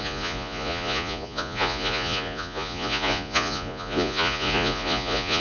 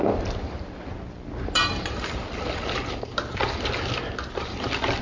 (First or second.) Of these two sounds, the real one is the second